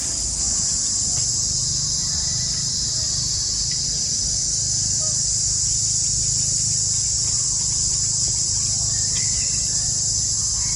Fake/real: real